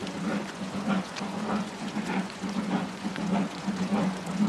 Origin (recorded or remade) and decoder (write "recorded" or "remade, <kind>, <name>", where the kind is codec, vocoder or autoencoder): remade, vocoder, Vocos